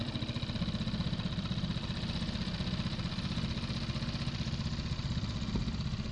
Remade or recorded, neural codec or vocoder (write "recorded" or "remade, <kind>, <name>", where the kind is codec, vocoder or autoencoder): recorded